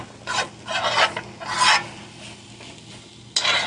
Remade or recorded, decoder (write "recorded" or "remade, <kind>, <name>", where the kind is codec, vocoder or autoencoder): recorded